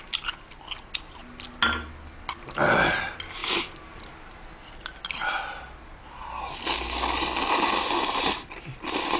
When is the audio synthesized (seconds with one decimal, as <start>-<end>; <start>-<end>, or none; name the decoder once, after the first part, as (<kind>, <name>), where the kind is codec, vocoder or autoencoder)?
none